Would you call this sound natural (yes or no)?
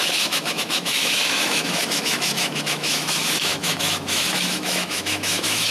no